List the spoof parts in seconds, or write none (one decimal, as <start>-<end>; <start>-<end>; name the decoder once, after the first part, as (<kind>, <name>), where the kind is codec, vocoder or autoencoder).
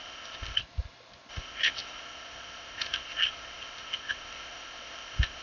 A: 0.0-0.6 (codec, ZipCodec); 1.3-5.4